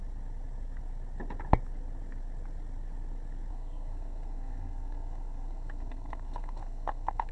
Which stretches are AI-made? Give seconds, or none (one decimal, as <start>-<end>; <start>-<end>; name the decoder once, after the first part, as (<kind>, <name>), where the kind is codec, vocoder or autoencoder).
3.5-7.3 (codec, SNAC)